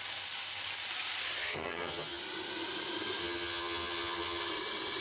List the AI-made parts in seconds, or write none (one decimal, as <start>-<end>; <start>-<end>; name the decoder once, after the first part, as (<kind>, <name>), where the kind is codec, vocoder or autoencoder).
1.4-2.2 (vocoder, HiFi-GAN); 3.2-4.5